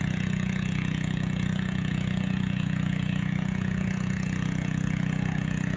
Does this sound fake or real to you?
fake